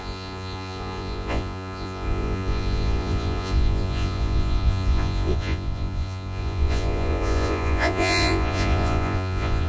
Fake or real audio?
fake